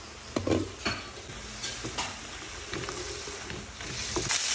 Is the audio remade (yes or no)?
no